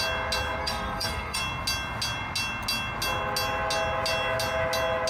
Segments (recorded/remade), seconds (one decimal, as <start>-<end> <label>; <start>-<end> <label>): 0.0-0.6 recorded; 0.6-1.4 remade; 1.4-5.1 recorded